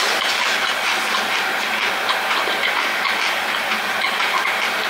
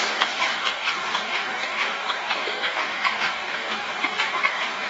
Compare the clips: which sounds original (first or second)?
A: first